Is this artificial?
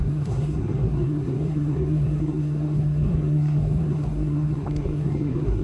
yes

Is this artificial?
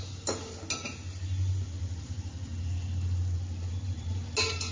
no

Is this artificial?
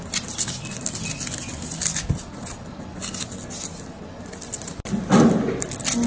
no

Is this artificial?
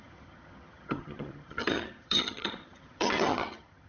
yes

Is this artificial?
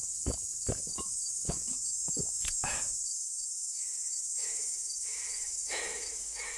yes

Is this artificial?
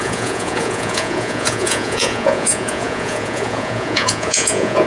yes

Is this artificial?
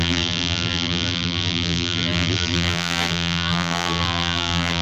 yes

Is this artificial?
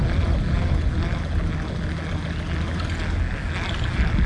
no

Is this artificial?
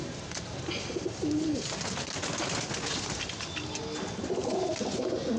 no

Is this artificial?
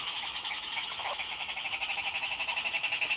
yes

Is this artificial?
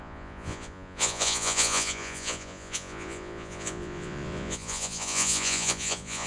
yes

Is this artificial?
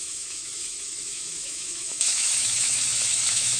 yes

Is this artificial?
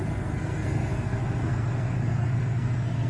yes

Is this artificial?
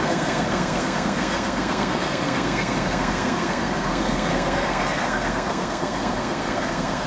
yes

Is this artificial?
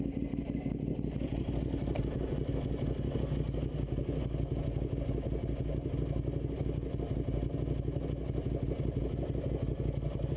no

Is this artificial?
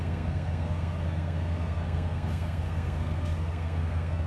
yes